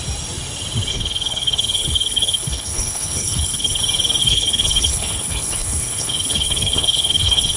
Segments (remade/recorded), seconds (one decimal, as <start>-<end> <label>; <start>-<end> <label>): 0.0-0.9 recorded; 0.9-3.8 remade; 3.8-4.2 recorded; 4.2-7.6 remade